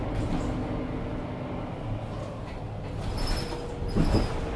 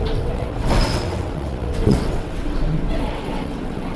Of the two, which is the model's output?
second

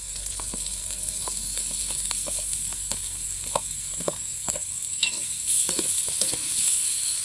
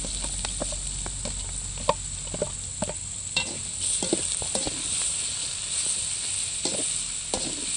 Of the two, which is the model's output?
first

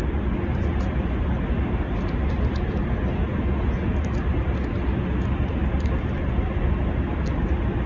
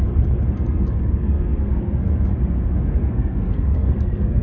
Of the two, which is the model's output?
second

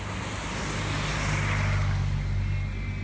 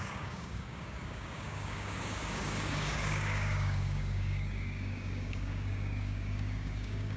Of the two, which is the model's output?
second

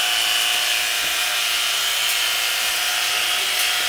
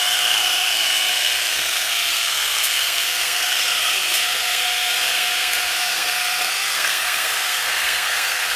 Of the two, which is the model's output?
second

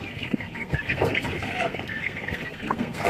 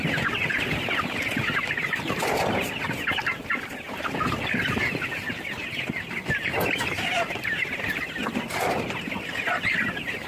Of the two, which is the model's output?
first